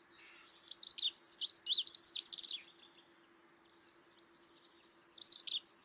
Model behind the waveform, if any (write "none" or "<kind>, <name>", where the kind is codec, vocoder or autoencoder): none